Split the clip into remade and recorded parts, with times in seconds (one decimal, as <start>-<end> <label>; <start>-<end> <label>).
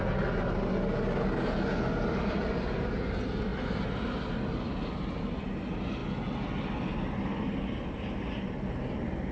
0.0-9.3 recorded